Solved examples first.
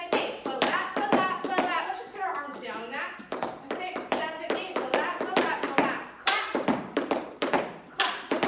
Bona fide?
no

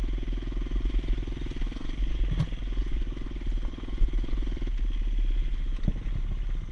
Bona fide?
yes